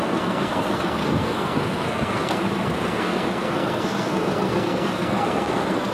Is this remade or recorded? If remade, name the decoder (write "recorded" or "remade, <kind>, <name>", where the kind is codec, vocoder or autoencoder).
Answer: remade, codec, SNAC